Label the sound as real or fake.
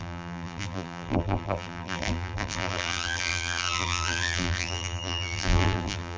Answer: fake